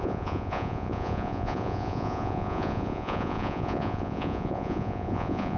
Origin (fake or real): fake